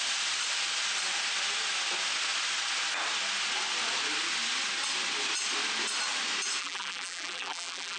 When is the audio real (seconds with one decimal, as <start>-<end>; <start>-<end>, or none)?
0.0-6.6